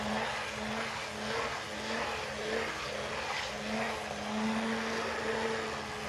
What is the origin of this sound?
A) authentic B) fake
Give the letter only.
A